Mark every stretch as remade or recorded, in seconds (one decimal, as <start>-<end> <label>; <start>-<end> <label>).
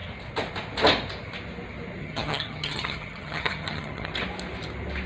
0.0-2.0 recorded; 2.0-4.1 remade; 4.1-5.1 recorded